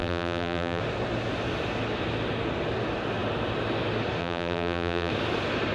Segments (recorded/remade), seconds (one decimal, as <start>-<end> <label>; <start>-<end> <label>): 0.0-0.8 remade; 0.8-4.2 recorded; 4.2-5.1 remade; 5.1-5.7 recorded